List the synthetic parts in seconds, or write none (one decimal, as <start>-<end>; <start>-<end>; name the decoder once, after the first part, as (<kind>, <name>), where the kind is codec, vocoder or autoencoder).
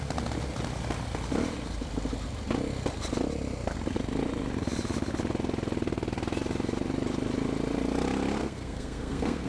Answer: 8.4-9.5 (codec, SNAC)